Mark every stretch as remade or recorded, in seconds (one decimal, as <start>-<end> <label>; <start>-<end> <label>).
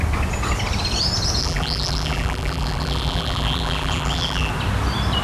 0.0-1.4 recorded; 1.4-4.5 remade; 4.5-5.2 recorded